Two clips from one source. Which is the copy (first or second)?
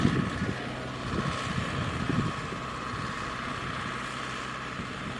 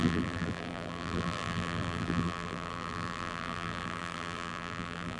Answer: second